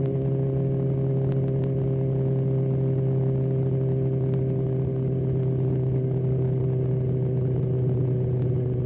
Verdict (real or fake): real